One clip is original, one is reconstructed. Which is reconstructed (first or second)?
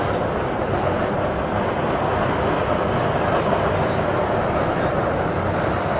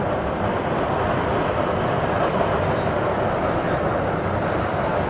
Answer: second